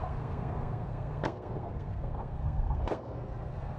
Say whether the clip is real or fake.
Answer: fake